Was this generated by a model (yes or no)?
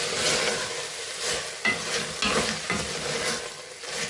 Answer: no